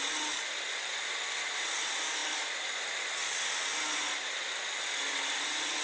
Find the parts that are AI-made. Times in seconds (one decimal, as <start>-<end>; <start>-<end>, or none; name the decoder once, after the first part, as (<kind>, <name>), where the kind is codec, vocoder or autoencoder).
none